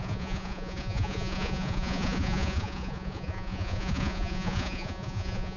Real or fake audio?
fake